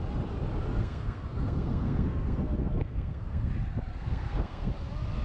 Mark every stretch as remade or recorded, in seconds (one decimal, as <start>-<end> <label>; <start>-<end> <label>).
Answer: 0.0-0.7 recorded; 0.7-3.5 remade; 3.5-3.9 recorded; 3.9-4.7 remade; 4.7-5.2 recorded